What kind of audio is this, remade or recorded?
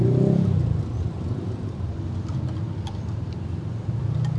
recorded